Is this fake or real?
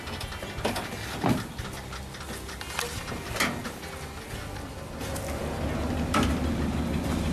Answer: real